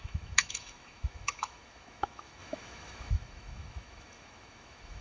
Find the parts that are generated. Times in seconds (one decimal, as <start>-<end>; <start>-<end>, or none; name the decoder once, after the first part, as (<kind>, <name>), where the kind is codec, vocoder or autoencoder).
0.0-5.0 (autoencoder, DAC-VAE)